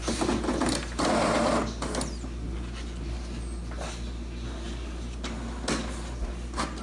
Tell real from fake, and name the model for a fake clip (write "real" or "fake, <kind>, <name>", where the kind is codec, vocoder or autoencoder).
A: real